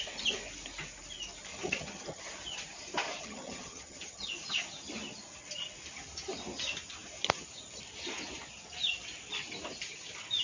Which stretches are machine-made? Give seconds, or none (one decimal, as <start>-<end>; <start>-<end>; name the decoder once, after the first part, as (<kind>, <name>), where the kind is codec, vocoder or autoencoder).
1.5-2.2 (vocoder, HiFi-GAN); 3.2-4.3